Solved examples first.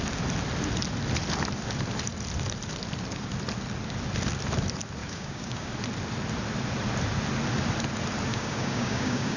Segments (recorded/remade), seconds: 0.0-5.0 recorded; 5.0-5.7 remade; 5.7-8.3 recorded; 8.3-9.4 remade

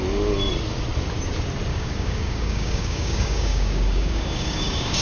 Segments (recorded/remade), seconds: 0.0-1.7 recorded; 1.7-5.0 remade

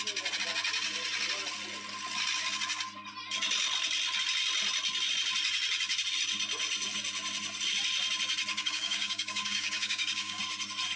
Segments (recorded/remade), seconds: 0.0-8.5 recorded; 8.5-10.4 remade; 10.4-11.0 recorded

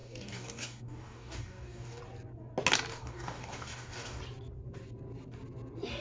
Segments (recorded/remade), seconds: 0.0-2.0 remade; 2.0-2.9 recorded; 2.9-4.2 remade; 4.2-6.0 recorded

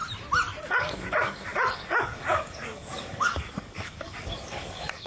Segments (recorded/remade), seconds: 0.0-0.7 recorded; 0.7-5.1 remade

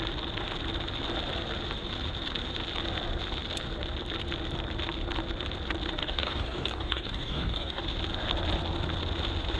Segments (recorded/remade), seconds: 0.0-6.0 recorded; 6.0-7.8 remade; 7.8-9.6 recorded

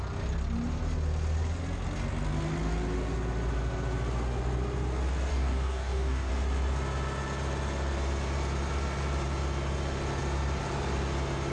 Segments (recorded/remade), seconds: 0.0-5.3 recorded; 5.3-6.3 remade; 6.3-11.5 recorded